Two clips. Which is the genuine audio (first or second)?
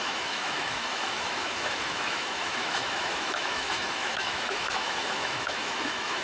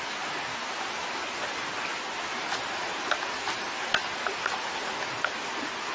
second